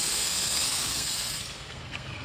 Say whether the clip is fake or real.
fake